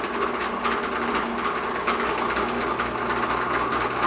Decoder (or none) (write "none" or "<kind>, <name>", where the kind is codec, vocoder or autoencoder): none